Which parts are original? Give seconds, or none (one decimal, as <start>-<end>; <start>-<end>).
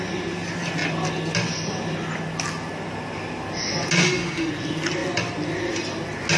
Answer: 0.0-4.0; 4.5-6.4